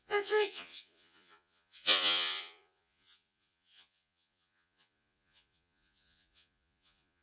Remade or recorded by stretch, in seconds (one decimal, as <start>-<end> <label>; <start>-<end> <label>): 0.0-7.2 remade